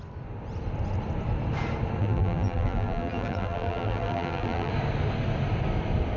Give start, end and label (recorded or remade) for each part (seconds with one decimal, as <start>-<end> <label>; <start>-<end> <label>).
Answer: 0.0-2.0 recorded; 2.0-4.7 remade; 4.7-6.2 recorded